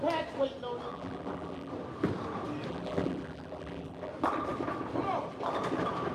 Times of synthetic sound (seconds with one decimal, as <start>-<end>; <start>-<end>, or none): 0.9-1.7; 2.7-4.1